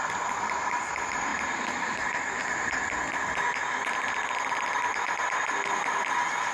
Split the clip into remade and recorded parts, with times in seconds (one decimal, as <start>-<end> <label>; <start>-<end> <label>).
0.0-1.3 recorded; 1.3-2.4 remade; 2.4-6.5 recorded